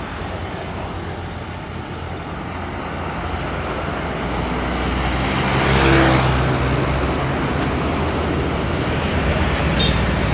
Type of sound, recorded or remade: recorded